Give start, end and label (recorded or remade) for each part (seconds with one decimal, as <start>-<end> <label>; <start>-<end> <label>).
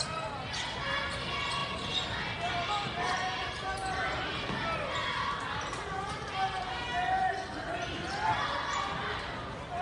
0.0-9.8 recorded